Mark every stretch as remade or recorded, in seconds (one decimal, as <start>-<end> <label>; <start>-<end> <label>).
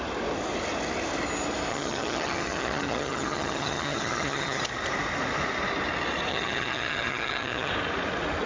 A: 0.0-1.7 recorded; 1.7-4.6 remade; 4.6-6.3 recorded; 6.3-7.7 remade; 7.7-8.5 recorded